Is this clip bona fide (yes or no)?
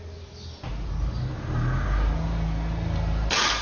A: yes